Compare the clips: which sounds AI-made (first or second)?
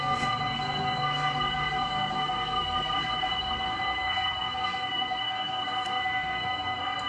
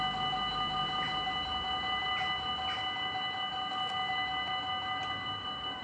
first